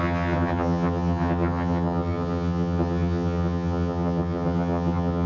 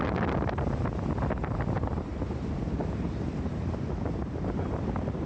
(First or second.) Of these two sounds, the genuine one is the second